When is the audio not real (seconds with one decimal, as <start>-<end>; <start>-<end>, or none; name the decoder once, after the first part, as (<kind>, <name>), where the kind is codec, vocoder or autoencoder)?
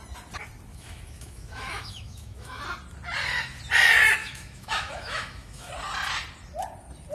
0.7-2.6 (autoencoder, DAC-VAE); 4.2-5.7